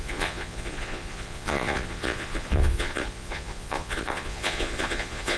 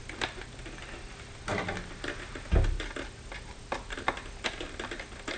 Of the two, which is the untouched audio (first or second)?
second